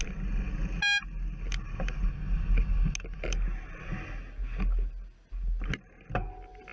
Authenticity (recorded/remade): recorded